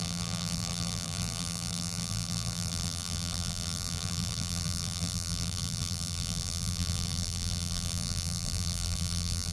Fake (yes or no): yes